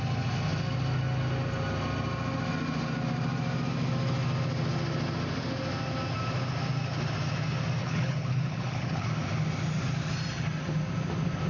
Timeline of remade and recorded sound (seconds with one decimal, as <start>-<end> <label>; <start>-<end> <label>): 0.0-7.8 recorded; 7.8-9.1 remade; 9.1-11.5 recorded